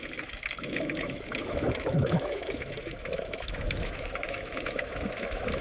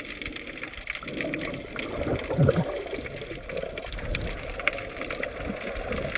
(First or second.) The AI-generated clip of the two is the first